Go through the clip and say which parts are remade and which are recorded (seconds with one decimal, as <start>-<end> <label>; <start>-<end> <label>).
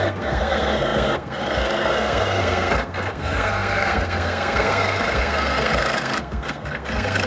0.0-7.3 remade